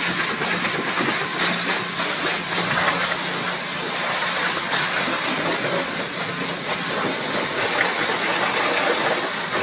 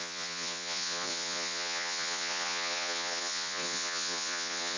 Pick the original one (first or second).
first